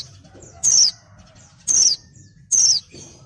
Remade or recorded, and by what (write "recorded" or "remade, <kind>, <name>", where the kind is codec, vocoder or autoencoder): recorded